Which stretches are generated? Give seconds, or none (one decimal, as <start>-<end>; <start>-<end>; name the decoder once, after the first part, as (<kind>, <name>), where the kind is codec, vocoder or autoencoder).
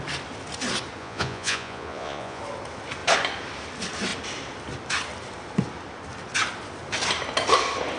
1.0-2.4 (vocoder, Vocos)